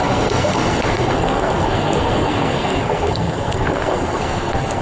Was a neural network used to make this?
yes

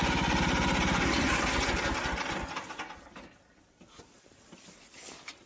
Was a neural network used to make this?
no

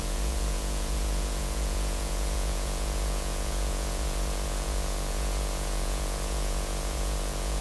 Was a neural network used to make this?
yes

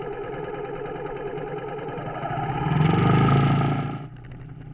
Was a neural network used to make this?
no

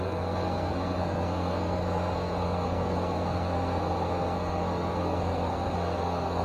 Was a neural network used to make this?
yes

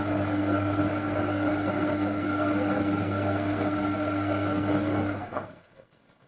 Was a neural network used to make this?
yes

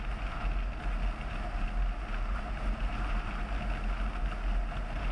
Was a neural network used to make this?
no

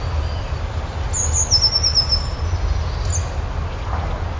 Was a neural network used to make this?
no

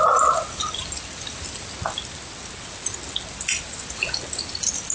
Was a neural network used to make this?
no